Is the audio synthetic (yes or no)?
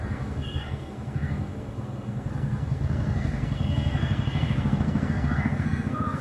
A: yes